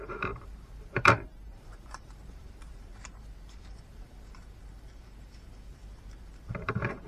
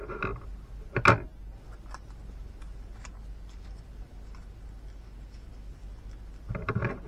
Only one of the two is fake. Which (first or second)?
first